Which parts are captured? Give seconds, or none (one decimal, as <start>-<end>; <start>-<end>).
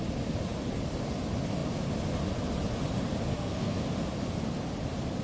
0.0-3.3; 3.8-5.2